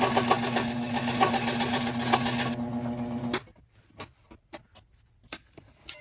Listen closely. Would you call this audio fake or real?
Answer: real